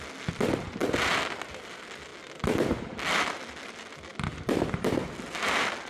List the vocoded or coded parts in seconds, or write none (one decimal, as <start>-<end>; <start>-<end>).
none